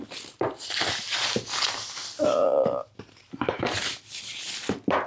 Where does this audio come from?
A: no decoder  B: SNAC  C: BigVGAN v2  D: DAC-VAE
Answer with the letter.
A